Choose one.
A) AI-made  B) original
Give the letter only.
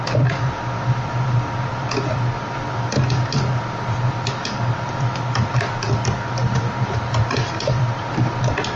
A